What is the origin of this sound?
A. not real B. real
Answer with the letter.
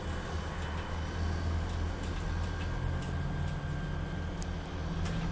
B